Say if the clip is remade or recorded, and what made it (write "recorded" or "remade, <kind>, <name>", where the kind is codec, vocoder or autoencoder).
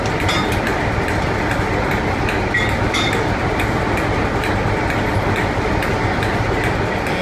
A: recorded